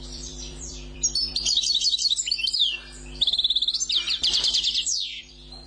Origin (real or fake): fake